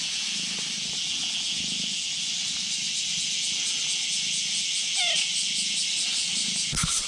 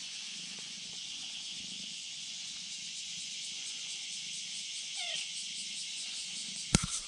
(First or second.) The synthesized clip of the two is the second